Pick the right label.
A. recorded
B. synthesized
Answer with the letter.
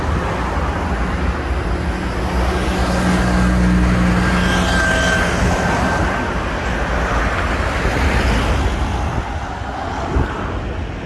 A